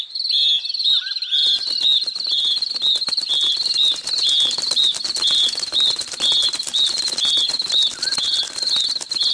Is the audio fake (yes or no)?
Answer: no